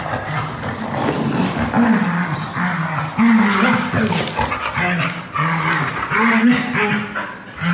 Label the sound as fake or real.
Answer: real